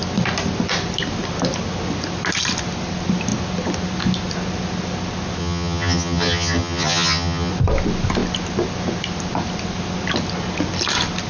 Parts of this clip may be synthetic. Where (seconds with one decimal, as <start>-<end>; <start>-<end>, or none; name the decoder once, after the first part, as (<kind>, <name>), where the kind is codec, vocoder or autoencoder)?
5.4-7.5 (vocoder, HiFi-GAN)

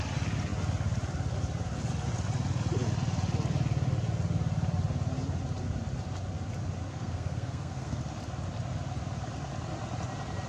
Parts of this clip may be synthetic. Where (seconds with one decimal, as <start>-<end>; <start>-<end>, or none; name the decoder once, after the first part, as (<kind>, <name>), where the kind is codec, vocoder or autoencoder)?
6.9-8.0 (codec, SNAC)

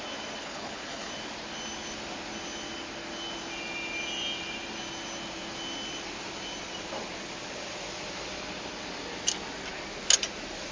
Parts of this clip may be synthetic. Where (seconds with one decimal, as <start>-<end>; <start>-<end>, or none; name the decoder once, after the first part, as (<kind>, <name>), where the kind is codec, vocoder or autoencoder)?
0.4-1.1 (codec, HILCodec)

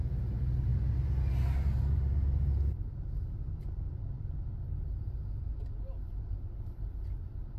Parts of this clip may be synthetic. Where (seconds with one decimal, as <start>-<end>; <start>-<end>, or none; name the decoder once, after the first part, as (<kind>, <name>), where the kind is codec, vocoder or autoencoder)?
none